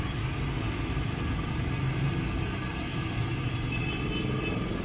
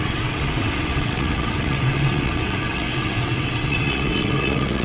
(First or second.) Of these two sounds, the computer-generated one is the second